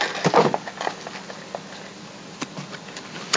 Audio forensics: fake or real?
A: real